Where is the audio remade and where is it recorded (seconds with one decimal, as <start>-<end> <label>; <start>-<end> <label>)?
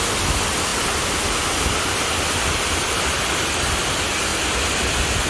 0.0-5.3 recorded